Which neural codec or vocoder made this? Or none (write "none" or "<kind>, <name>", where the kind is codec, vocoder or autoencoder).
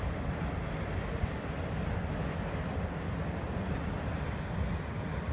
none